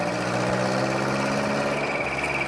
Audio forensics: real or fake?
real